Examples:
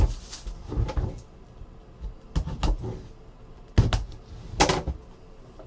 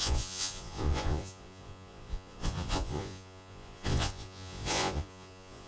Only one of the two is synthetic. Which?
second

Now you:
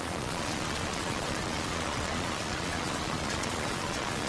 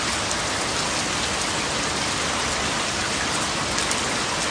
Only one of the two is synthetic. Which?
first